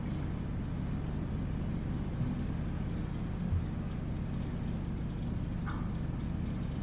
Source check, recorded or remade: recorded